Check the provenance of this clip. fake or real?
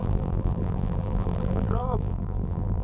fake